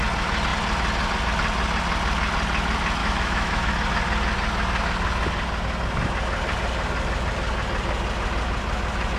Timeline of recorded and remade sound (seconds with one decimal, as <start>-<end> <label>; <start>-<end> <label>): 0.0-3.0 recorded; 3.0-3.7 remade; 3.7-9.2 recorded